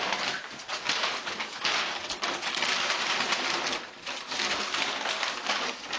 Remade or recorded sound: recorded